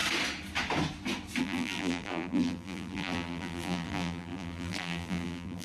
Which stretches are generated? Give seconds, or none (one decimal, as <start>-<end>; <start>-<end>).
1.4-5.6

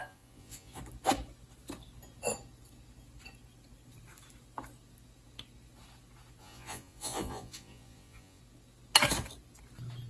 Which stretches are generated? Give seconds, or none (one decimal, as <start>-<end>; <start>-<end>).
0.0-0.8; 6.4-8.4

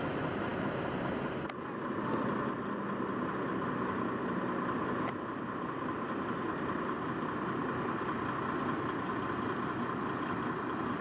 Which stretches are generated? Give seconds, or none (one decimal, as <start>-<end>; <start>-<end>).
none

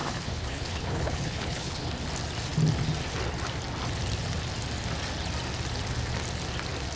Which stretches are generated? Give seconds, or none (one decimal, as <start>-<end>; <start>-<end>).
0.0-1.9

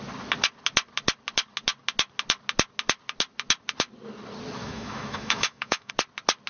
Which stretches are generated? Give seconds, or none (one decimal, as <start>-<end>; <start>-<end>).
4.6-5.9

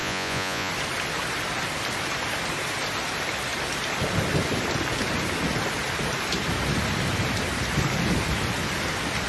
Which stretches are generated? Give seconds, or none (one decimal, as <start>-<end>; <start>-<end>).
0.0-0.7

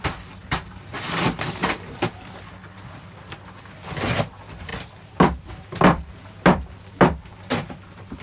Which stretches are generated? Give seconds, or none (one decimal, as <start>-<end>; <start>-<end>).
0.0-0.4; 0.9-8.2